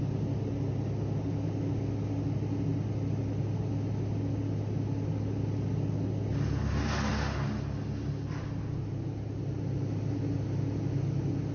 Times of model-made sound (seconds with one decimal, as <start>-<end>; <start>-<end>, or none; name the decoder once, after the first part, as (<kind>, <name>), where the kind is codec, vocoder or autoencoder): none